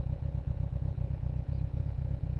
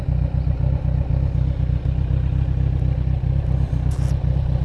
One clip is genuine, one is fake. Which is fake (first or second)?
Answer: first